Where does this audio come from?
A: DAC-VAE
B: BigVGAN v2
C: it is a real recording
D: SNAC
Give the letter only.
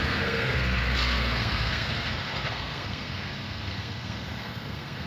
D